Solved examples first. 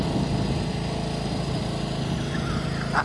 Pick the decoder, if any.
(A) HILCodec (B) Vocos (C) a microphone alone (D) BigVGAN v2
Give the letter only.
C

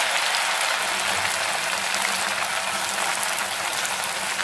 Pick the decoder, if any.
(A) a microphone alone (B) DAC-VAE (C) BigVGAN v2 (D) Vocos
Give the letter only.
A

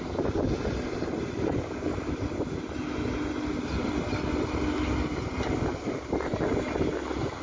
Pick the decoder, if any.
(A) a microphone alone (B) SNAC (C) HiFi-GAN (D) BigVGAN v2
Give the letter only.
A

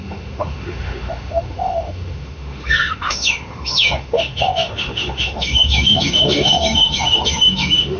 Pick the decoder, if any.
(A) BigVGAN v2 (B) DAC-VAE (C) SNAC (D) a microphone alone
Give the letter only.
B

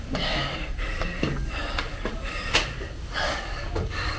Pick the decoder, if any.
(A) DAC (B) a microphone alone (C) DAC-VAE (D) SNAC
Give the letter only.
A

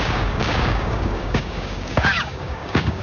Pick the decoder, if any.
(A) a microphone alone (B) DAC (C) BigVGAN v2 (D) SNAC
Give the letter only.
B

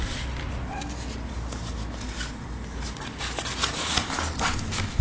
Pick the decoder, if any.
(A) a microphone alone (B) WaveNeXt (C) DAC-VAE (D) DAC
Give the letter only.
A